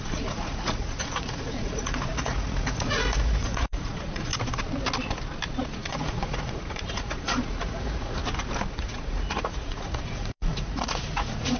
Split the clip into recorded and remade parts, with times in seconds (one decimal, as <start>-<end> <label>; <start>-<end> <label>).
0.0-4.3 remade; 4.3-5.6 recorded; 5.6-8.2 remade; 8.2-8.7 recorded; 8.7-11.6 remade